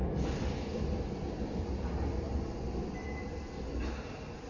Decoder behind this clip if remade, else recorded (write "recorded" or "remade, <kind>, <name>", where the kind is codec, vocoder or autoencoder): recorded